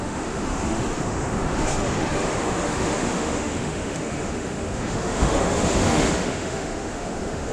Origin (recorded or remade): remade